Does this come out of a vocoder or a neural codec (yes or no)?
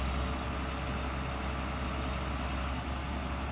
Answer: no